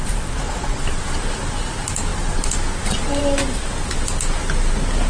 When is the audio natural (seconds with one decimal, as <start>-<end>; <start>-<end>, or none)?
0.8-5.1

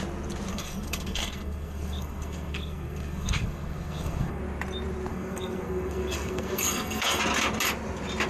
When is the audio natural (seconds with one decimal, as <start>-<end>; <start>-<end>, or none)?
0.0-0.5; 4.4-5.1; 7.2-8.3

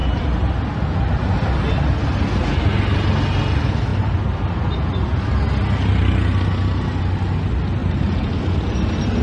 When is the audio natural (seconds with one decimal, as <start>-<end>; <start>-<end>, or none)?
0.0-7.8; 8.4-9.2

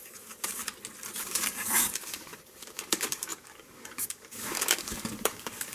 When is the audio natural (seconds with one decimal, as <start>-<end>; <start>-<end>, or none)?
0.6-1.2

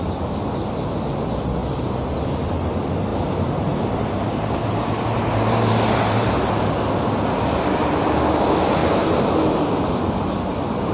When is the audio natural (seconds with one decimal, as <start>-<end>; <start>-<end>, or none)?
0.0-3.1; 6.3-10.9